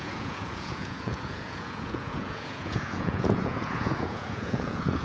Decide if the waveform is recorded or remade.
remade